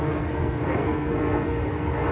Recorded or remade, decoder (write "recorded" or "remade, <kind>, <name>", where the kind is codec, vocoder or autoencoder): remade, codec, SNAC